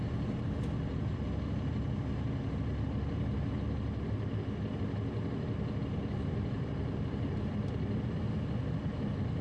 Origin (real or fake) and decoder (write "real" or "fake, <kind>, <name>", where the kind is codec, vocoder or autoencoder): real